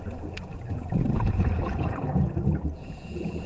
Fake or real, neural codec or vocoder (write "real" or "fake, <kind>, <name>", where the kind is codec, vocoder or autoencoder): fake, vocoder, Vocos